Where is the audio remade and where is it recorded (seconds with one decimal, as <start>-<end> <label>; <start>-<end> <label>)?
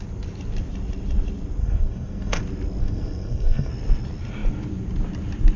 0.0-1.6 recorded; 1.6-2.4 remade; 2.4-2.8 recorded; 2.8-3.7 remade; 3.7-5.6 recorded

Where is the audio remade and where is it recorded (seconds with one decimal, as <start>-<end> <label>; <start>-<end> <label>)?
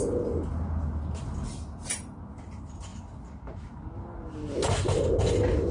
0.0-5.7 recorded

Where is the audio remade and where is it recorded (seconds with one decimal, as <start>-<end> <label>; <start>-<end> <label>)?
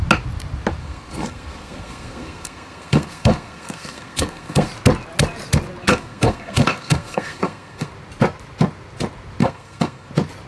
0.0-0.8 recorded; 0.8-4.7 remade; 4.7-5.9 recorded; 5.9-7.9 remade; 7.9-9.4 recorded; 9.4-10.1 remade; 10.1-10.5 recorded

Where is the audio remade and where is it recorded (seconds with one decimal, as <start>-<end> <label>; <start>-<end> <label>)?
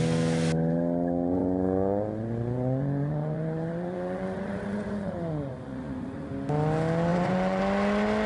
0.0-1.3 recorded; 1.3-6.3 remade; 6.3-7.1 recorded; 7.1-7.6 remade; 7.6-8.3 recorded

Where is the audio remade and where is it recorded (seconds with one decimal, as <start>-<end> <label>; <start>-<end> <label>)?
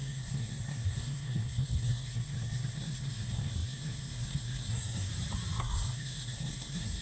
0.0-5.1 remade; 5.1-5.6 recorded; 5.6-7.0 remade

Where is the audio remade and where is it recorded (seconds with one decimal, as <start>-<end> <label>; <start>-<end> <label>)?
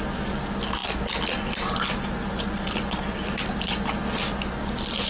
0.0-5.1 recorded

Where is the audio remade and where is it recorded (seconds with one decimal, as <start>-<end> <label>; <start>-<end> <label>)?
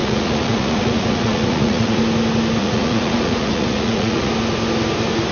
0.0-2.0 remade; 2.0-2.6 recorded; 2.6-4.3 remade; 4.3-5.3 recorded